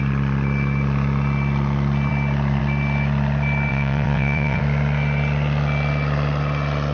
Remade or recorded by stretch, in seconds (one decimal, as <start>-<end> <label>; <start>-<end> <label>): 0.0-3.7 recorded; 3.7-4.6 remade; 4.6-6.9 recorded